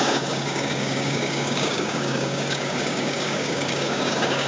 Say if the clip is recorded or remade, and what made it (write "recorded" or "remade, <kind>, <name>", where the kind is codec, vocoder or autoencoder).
remade, codec, DAC